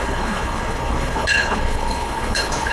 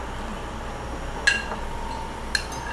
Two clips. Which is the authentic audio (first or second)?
second